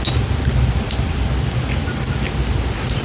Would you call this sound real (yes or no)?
yes